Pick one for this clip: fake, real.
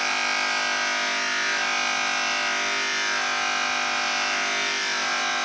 real